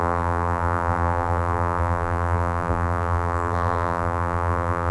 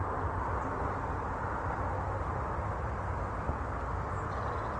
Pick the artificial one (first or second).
first